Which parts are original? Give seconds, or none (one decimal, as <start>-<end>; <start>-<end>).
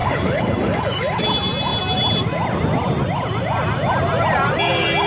1.0-5.1